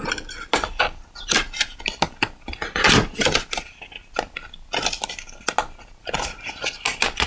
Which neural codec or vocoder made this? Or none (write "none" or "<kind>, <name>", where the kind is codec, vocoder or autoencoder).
none